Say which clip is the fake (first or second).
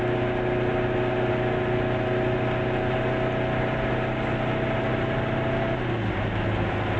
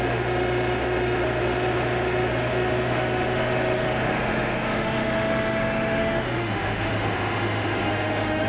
second